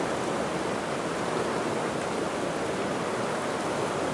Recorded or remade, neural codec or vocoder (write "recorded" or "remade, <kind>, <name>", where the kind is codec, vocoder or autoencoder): recorded